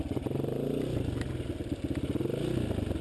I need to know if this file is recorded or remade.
recorded